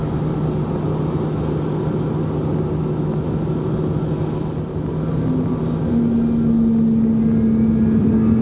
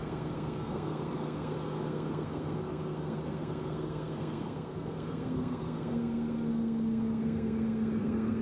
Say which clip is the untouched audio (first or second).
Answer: first